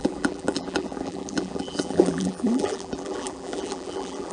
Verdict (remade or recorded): remade